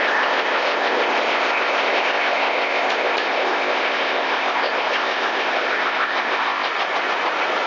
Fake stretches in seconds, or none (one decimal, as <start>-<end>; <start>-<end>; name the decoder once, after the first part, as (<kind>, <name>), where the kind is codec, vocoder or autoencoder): 0.0-6.7 (codec, ZipCodec)